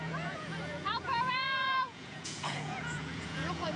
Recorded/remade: remade